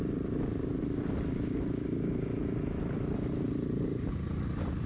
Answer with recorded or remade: recorded